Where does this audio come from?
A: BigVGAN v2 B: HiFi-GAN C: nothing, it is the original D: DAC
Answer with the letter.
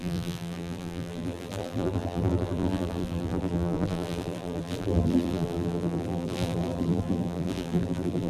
A